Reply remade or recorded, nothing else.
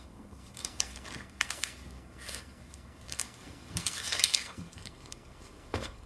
remade